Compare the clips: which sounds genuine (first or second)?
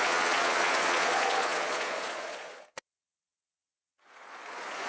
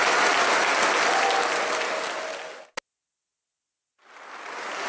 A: second